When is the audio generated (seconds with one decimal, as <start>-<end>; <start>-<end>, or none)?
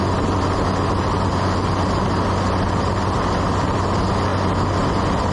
none